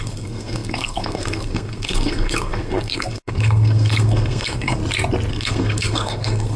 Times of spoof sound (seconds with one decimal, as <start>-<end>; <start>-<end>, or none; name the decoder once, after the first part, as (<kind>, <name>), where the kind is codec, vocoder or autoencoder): 0.0-4.8 (codec, SNAC); 5.3-6.6